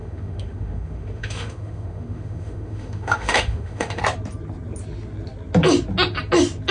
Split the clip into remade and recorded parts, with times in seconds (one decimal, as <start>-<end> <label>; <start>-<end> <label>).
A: 0.0-4.0 remade; 4.0-6.7 recorded